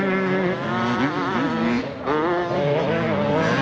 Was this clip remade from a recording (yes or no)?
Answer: no